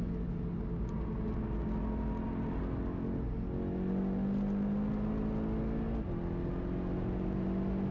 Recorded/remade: recorded